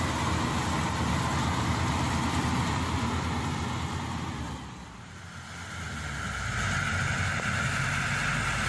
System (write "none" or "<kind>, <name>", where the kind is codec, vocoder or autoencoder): none